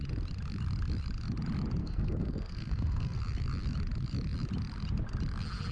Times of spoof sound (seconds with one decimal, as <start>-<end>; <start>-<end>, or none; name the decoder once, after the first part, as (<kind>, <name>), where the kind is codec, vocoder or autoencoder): 1.8-3.2 (codec, SNAC)